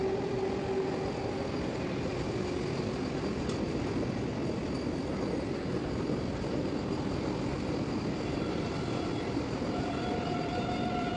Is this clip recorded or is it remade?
recorded